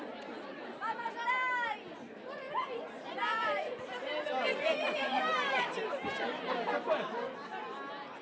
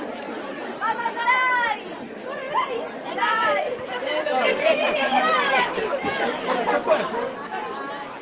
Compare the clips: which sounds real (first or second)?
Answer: first